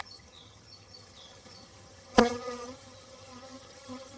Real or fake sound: fake